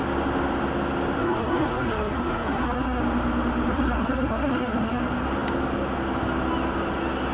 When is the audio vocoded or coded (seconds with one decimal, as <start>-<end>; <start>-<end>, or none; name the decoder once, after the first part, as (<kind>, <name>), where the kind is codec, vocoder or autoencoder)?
1.2-3.0 (codec, SNAC); 3.7-5.0